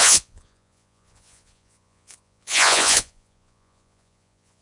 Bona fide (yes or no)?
no